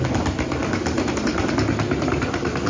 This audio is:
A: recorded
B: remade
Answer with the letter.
A